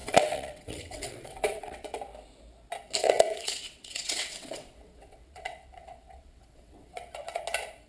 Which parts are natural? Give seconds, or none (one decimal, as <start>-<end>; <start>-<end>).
2.0-3.0; 7.4-7.9